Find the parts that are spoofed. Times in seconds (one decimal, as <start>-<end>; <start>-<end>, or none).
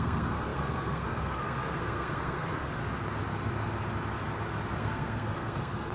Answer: 0.0-2.8; 4.7-5.9